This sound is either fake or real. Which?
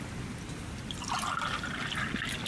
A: real